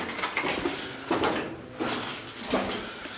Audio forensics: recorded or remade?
recorded